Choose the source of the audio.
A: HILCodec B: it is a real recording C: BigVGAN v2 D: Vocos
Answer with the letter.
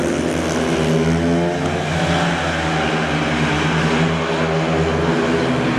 B